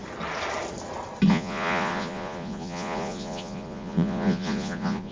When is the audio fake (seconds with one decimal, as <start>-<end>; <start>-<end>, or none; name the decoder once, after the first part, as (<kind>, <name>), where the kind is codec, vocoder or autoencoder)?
1.3-5.1 (vocoder, Vocos)